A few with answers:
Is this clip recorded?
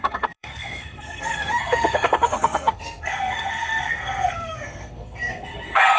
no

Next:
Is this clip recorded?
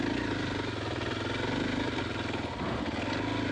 yes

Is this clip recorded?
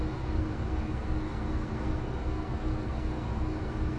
no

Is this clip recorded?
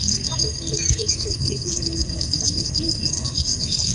no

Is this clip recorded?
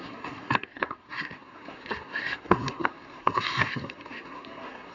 no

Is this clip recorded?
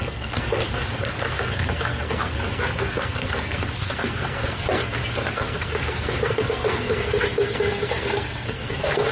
no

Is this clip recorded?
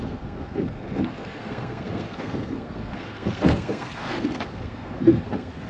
no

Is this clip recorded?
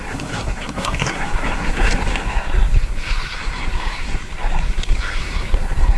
no